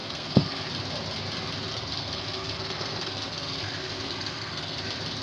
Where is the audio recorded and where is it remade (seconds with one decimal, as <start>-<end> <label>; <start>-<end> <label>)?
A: 0.0-0.7 remade; 0.7-1.7 recorded; 1.7-4.8 remade; 4.8-5.2 recorded